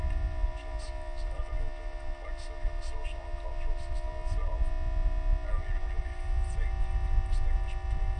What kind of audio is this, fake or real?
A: real